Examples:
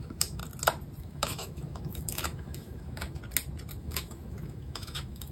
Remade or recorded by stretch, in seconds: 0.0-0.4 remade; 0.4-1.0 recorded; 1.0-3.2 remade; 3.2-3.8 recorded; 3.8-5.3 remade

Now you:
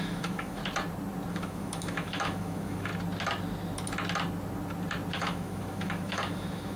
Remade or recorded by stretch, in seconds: 0.0-0.6 remade; 0.6-1.3 recorded; 1.3-2.9 remade; 2.9-5.1 recorded; 5.1-6.8 remade

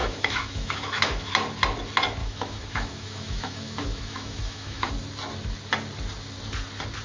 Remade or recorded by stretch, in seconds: 0.0-1.3 remade; 1.3-2.2 recorded; 2.2-4.9 remade; 4.9-7.0 recorded

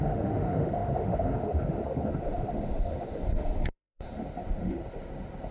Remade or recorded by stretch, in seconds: 0.0-5.5 remade

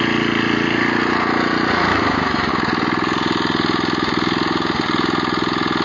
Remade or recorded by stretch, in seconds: 0.0-1.9 recorded; 1.9-2.5 remade; 2.5-5.8 recorded